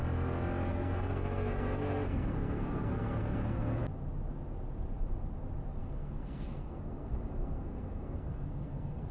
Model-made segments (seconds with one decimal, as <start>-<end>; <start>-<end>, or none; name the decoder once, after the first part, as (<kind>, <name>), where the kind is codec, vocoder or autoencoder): 0.7-3.8 (codec, SNAC); 5.8-9.1

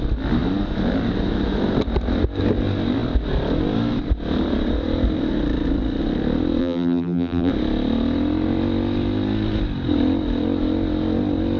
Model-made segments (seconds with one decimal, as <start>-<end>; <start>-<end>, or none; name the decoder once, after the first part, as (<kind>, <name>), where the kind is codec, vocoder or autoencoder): 6.6-7.5 (vocoder, BigVGAN v2)